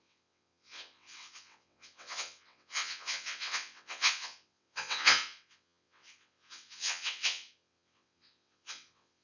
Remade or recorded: remade